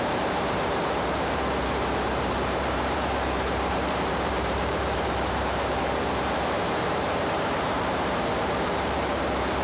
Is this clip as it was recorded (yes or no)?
no